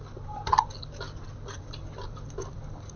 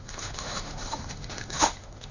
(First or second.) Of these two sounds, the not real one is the second